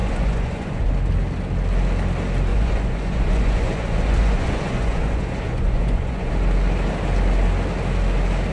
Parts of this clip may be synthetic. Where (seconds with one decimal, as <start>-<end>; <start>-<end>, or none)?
0.0-0.9; 2.5-6.3